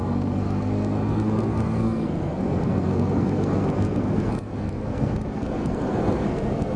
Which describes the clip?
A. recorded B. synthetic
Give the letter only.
B